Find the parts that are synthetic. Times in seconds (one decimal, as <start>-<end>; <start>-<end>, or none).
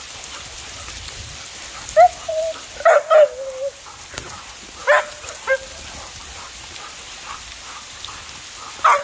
none